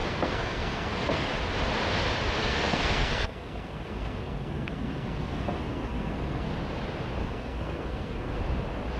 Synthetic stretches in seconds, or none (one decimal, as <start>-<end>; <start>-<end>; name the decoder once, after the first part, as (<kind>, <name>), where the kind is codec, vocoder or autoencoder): 0.0-1.3 (codec, SNAC); 2.4-6.5; 7.2-8.4